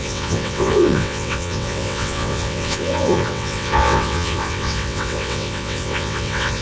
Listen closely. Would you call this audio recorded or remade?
remade